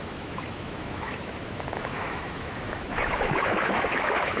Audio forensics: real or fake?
fake